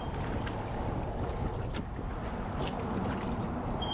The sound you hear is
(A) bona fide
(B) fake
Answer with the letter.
A